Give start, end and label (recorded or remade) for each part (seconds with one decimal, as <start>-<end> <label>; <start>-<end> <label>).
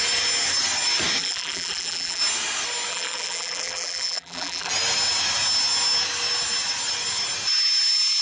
0.0-1.2 recorded; 1.2-2.2 remade; 2.2-2.9 recorded; 2.9-4.7 remade; 4.7-8.2 recorded